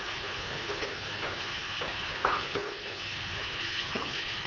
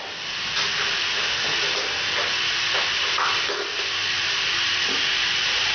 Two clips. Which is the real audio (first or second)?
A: second